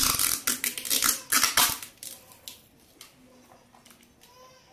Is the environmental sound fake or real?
real